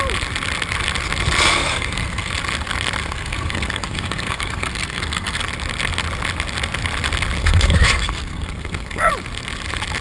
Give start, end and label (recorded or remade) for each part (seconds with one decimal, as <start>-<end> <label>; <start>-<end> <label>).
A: 0.0-1.5 recorded; 1.5-2.3 remade; 2.3-3.0 recorded; 3.0-5.4 remade; 5.4-7.4 recorded; 7.4-9.1 remade; 9.1-10.0 recorded